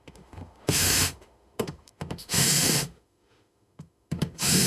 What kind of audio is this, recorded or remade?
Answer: remade